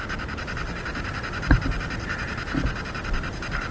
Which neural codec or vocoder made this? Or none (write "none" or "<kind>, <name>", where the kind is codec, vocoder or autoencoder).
none